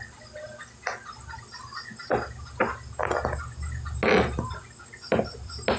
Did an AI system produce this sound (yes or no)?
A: no